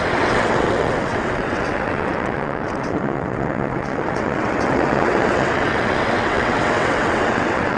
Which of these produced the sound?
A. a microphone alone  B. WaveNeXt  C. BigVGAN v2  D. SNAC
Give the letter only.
B